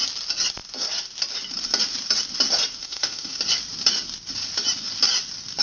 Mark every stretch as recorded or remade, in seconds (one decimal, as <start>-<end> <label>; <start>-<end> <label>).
0.0-2.8 recorded; 2.8-3.4 remade; 3.4-5.6 recorded